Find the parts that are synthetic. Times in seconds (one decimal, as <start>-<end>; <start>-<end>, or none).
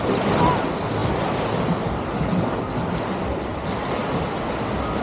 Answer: none